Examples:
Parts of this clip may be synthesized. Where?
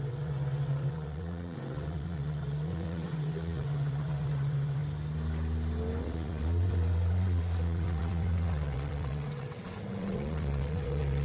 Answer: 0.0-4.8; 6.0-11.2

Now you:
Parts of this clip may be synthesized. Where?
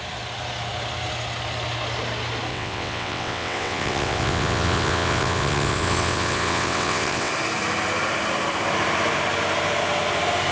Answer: 2.5-7.3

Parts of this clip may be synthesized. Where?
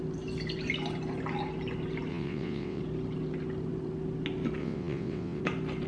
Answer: 2.1-2.8; 4.6-5.4